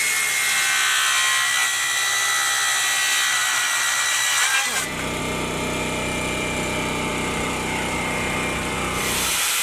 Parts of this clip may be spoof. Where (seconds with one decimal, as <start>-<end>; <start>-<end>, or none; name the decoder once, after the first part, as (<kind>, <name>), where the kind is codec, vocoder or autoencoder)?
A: 7.1-9.6 (vocoder, BigVGAN v2)